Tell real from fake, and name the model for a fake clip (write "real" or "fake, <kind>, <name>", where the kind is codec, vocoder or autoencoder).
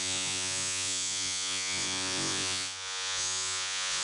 fake, vocoder, Vocos